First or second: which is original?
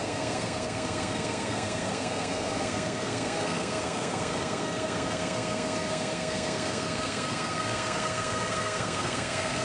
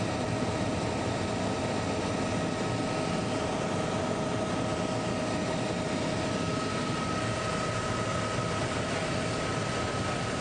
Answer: second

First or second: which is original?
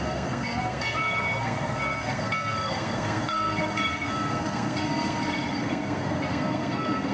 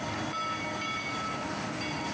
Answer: second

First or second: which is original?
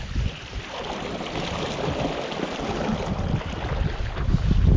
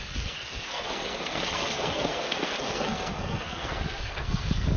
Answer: first